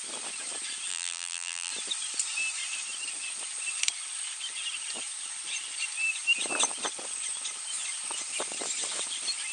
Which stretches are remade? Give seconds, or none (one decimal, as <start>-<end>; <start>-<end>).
0.9-1.7